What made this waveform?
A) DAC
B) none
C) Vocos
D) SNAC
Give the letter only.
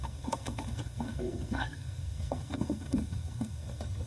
D